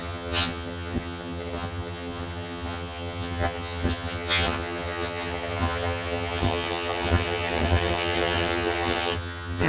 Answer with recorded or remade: remade